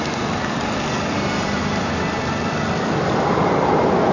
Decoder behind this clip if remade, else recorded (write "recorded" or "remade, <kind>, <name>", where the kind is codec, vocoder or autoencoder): recorded